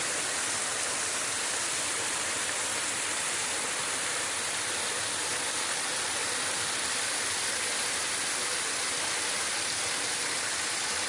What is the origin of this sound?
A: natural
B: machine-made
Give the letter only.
A